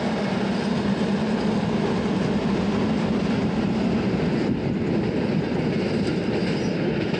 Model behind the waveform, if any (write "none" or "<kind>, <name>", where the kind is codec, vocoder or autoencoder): none